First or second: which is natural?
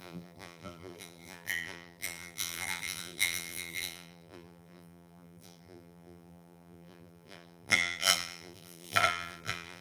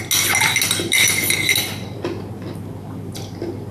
second